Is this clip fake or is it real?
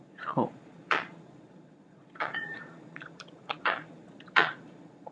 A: fake